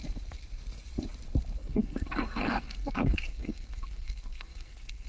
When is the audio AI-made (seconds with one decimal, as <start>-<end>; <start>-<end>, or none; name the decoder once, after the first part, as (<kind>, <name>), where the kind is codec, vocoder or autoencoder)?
1.6-5.1 (codec, SNAC)